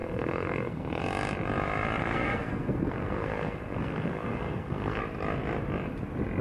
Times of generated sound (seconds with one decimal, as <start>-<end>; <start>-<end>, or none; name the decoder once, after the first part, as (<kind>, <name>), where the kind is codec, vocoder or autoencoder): 0.0-1.0 (codec, SNAC); 2.0-5.0